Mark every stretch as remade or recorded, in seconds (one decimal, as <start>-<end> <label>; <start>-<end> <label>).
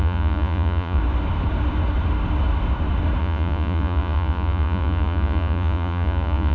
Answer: 0.0-1.0 remade; 1.0-3.2 recorded; 3.2-6.5 remade